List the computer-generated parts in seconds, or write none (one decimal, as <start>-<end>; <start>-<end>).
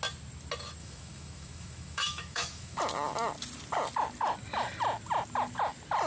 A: 0.8-2.8